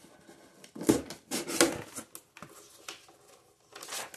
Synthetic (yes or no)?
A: no